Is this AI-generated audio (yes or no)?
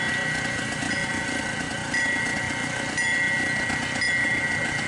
no